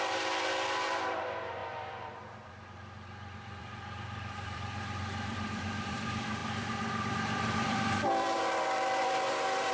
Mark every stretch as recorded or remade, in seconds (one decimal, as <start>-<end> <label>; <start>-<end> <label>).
0.0-9.7 remade